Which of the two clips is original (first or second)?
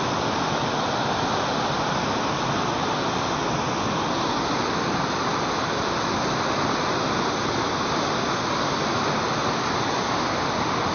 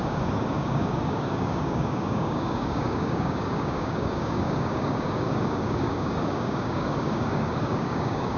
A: first